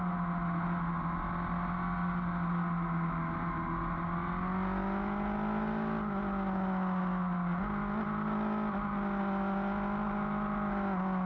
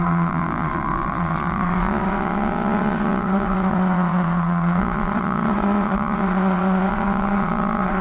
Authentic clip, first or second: first